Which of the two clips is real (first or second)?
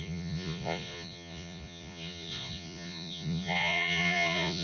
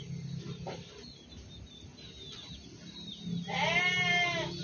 second